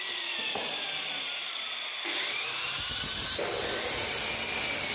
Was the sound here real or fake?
real